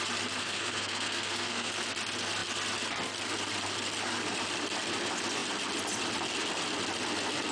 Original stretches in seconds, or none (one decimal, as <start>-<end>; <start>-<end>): 0.0-0.4; 1.7-7.5